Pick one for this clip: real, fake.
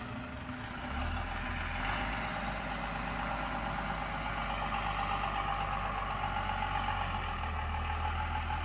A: real